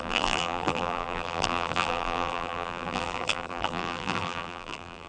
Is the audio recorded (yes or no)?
no